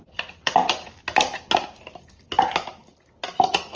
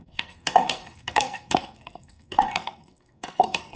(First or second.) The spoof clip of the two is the second